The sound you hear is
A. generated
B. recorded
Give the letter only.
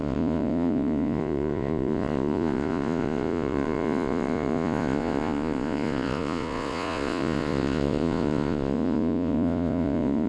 A